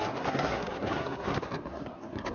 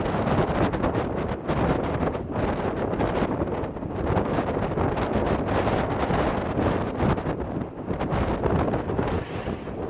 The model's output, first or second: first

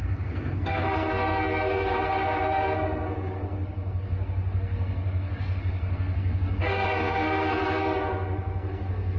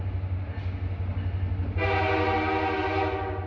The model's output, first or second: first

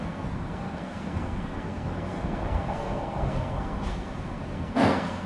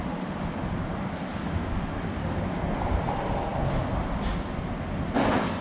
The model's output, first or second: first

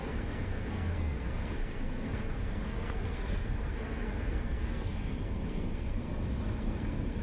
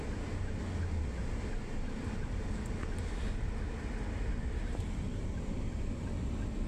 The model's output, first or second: first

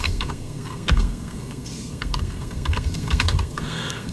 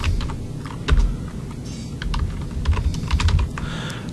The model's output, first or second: first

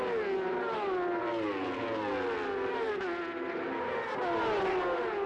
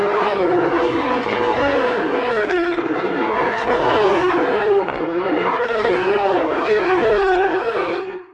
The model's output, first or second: second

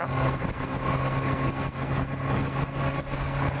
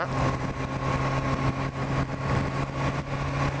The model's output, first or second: first